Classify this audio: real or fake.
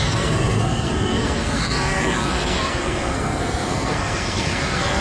fake